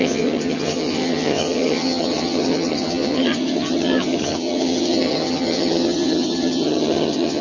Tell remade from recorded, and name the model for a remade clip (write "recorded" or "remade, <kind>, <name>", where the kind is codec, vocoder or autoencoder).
remade, vocoder, HiFi-GAN